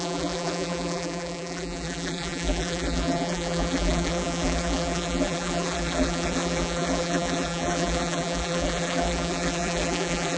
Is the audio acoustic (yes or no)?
no